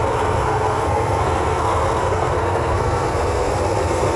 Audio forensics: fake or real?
fake